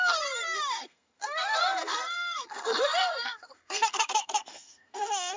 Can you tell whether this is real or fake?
fake